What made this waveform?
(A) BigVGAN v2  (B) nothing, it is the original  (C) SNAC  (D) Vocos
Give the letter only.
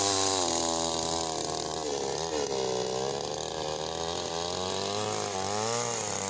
B